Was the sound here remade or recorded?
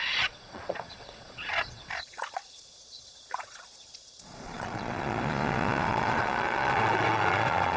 remade